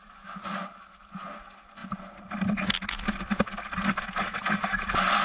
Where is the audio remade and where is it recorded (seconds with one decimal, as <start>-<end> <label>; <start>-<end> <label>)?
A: 0.0-5.2 recorded